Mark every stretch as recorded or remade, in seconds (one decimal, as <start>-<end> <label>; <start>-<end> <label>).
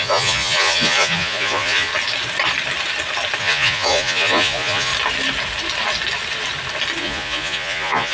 0.0-1.9 remade; 1.9-3.4 recorded; 3.4-4.9 remade; 4.9-7.0 recorded; 7.0-8.1 remade